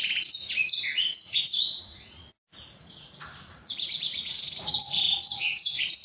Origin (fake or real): fake